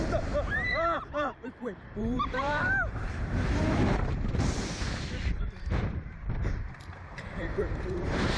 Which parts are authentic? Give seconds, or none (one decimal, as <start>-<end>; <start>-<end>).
4.8-5.5